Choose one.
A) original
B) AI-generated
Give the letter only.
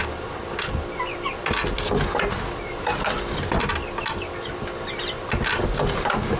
A